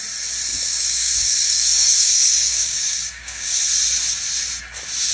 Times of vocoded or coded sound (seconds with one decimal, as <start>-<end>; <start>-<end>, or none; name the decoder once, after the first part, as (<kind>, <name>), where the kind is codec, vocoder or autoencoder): 0.5-3.6 (codec, DAC)